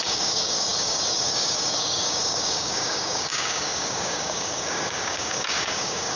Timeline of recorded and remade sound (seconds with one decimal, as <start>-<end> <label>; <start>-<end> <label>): 0.0-6.2 remade